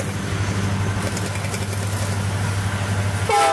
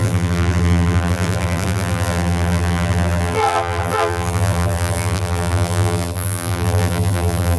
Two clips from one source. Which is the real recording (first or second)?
first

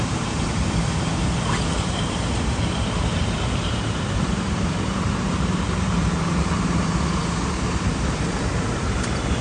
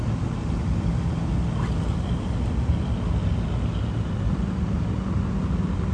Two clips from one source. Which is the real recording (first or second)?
second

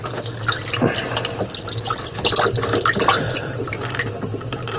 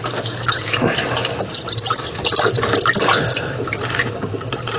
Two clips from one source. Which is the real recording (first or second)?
first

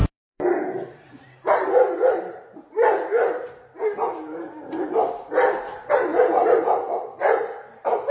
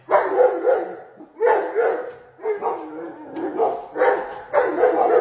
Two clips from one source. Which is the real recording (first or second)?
second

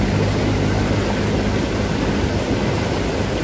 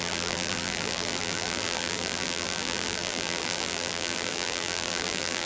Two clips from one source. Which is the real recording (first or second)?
first